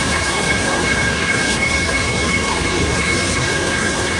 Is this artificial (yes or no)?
yes